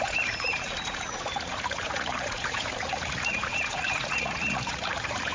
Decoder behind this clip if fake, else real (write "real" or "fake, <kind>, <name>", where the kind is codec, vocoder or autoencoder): fake, vocoder, Vocos